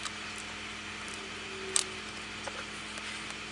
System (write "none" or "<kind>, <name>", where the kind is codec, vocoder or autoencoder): none